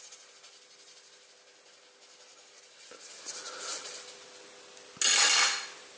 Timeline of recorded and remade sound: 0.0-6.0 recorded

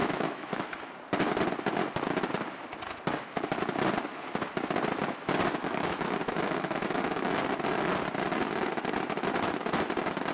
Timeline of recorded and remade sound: 0.0-0.9 remade; 0.9-5.6 recorded; 5.6-7.3 remade; 7.3-10.3 recorded

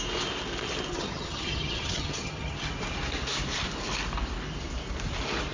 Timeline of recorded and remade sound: 0.0-0.9 recorded; 0.9-2.7 remade; 2.7-5.5 recorded

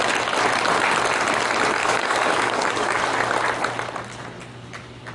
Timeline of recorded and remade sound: 0.0-1.8 recorded; 1.8-3.0 remade; 3.0-5.1 recorded

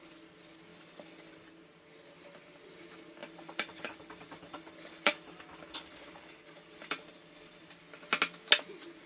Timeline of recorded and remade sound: 0.0-0.7 recorded; 0.7-1.5 remade; 1.5-3.2 recorded; 3.2-7.7 remade; 7.7-9.1 recorded

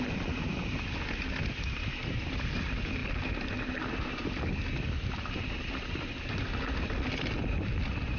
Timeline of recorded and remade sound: 0.0-8.2 recorded

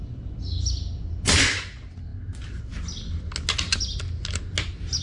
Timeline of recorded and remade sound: 0.0-5.0 recorded

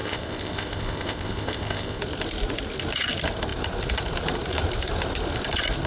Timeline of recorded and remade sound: 0.0-2.0 remade; 2.0-5.9 recorded